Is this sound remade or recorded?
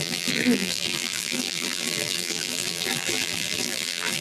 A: remade